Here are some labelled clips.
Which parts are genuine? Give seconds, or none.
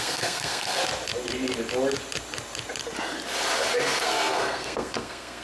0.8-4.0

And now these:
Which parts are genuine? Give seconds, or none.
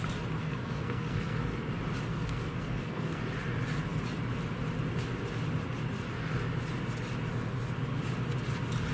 0.0-0.4; 1.7-2.1; 3.2-8.9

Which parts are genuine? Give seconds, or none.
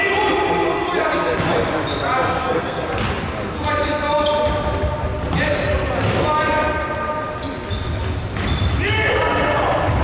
0.0-2.4; 2.9-10.0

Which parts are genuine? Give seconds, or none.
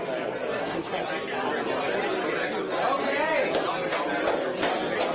0.0-0.6; 1.1-5.1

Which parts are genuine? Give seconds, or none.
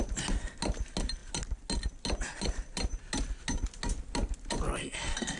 0.0-4.8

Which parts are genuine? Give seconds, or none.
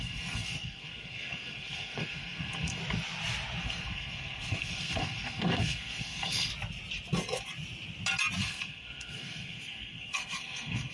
2.8-3.6; 6.5-8.4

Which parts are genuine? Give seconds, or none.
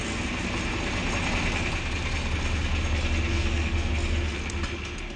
0.0-3.3; 3.9-5.2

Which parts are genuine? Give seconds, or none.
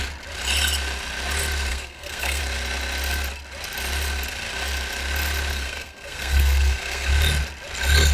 0.0-1.7; 2.4-5.5; 7.1-8.1